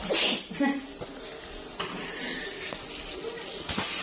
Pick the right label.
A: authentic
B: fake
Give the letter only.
A